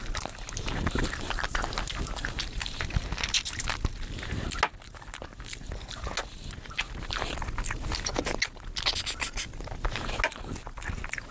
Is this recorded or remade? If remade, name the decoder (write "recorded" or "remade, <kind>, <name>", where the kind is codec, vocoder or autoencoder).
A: recorded